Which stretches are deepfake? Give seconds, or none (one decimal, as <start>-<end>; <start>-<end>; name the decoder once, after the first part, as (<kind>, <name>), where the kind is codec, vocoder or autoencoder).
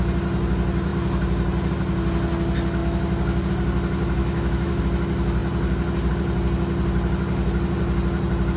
4.2-4.8 (autoencoder, DAC-VAE)